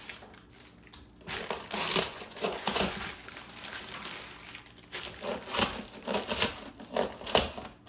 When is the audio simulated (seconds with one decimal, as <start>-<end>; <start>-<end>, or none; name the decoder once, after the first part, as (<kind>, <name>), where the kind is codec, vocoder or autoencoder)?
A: 2.1-3.1 (vocoder, Vocos)